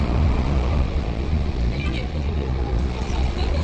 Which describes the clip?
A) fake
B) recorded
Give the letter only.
A